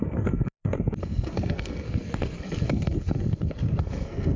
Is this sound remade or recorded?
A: remade